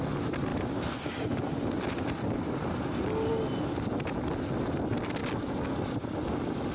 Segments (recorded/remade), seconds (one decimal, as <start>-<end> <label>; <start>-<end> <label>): 0.0-6.7 recorded